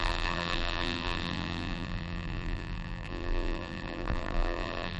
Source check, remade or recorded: remade